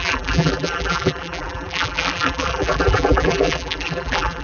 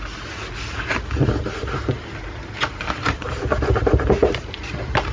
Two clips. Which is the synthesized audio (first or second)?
first